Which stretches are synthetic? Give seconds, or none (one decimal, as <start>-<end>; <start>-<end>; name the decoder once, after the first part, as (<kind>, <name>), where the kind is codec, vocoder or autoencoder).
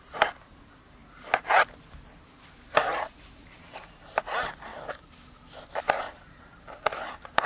0.0-1.0 (vocoder, BigVGAN v2); 2.9-4.7; 5.8-7.5